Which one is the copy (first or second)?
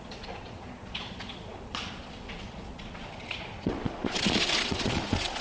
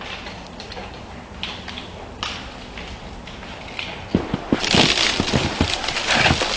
first